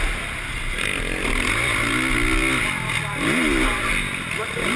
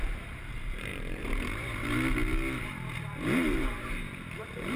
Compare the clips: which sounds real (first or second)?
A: first